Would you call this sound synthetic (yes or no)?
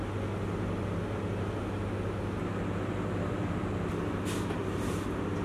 no